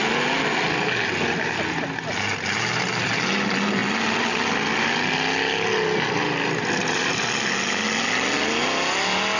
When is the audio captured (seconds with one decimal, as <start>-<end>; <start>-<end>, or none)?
0.0-9.4